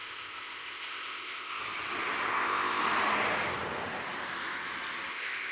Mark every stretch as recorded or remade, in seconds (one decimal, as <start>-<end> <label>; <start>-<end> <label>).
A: 0.0-1.6 remade; 1.6-2.3 recorded; 2.3-2.8 remade; 2.8-5.1 recorded; 5.1-5.5 remade